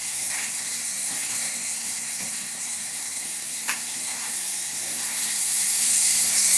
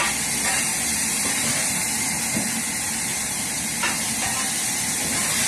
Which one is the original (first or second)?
second